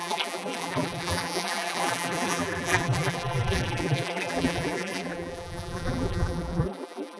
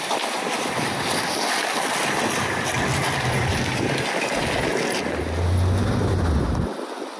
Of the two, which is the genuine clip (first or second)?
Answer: second